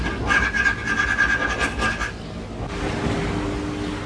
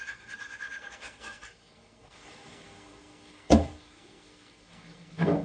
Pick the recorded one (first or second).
first